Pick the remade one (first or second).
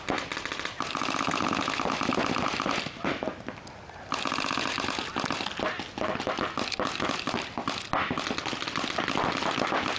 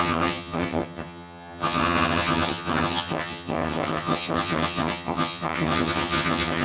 second